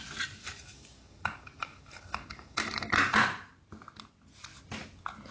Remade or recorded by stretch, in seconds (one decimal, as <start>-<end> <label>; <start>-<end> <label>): 0.0-0.4 recorded; 0.4-2.9 remade; 2.9-5.3 recorded